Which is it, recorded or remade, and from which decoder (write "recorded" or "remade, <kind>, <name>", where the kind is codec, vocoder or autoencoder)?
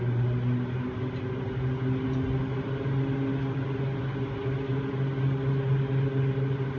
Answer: recorded